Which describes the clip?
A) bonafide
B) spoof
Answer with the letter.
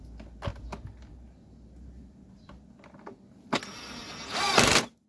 A